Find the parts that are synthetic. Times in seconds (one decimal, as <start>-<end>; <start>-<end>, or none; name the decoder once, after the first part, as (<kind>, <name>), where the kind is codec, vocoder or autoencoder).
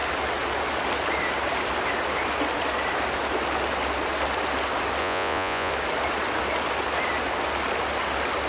5.0-5.7 (vocoder, Vocos)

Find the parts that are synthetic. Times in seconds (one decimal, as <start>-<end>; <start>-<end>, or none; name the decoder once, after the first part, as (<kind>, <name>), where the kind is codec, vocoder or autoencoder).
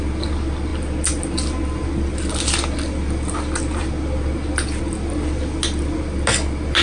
none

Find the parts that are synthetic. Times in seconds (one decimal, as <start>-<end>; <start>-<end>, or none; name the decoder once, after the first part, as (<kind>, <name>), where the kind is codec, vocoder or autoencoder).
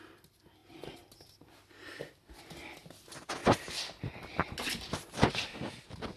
none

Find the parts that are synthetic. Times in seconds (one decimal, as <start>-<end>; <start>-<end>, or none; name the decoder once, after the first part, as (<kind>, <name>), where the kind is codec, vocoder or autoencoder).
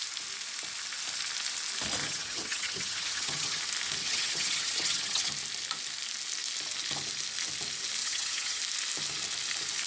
2.0-3.6 (vocoder, HiFi-GAN); 4.0-5.3; 8.0-8.6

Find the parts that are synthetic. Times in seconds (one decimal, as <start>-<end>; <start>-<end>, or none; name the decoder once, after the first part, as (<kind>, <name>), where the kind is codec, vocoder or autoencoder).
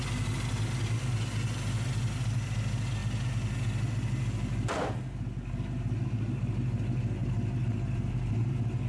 none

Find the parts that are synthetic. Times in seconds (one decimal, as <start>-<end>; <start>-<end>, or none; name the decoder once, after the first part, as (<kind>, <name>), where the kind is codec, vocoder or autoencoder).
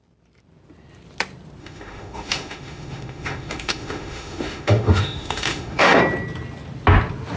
1.6-6.0 (autoencoder, DAC-VAE)